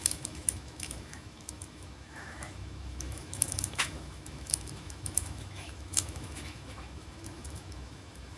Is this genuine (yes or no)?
no